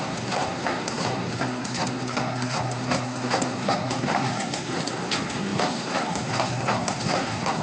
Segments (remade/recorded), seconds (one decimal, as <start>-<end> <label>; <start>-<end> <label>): 0.0-7.6 remade